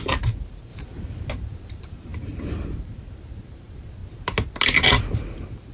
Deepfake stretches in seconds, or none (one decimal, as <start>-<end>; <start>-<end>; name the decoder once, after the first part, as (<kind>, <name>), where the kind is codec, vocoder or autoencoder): 0.0-4.0 (vocoder, BigVGAN v2); 5.0-5.7